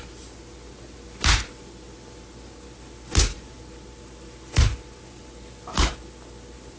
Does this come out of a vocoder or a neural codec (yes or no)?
no